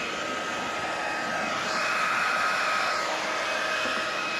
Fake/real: real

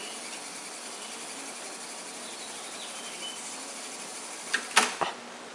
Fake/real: real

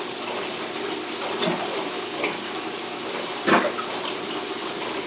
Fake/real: real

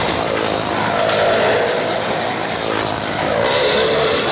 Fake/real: real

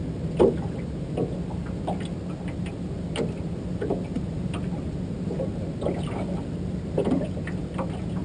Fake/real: real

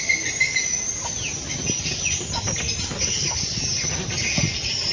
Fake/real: real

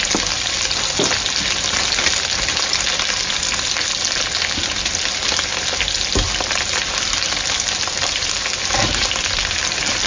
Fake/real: real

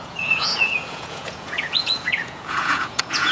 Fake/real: fake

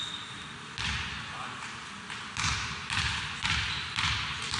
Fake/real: real